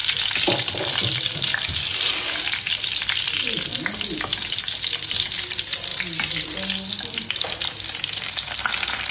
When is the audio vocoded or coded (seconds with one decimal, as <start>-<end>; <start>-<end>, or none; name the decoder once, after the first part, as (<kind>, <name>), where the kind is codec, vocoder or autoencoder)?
0.6-3.7 (vocoder, BigVGAN v2); 4.6-5.9; 6.9-9.1